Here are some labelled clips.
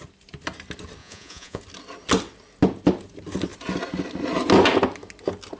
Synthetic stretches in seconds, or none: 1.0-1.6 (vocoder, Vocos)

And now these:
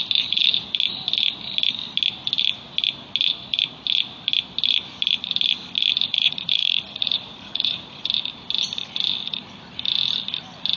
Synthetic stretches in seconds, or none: 5.9-8.0 (vocoder, Vocos)

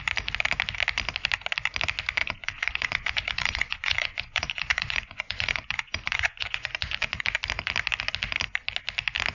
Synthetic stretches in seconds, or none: 2.2-7.2 (vocoder, Vocos)

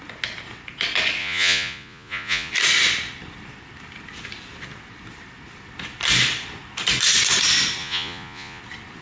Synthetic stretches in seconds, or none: 1.2-2.5 (vocoder, Vocos); 7.8-8.6

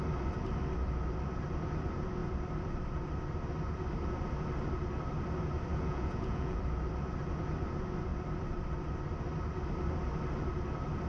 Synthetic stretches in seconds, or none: 5.7-6.6 (vocoder, Vocos)